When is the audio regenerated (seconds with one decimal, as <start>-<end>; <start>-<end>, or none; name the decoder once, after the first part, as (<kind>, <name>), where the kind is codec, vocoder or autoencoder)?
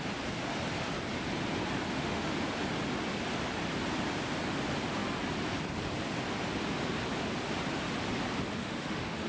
1.9-2.4 (autoencoder, DAC-VAE); 8.6-9.3